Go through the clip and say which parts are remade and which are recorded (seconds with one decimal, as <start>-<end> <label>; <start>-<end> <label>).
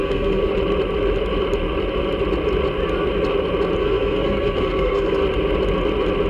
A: 0.0-0.5 remade; 0.5-3.8 recorded; 3.8-5.2 remade; 5.2-6.3 recorded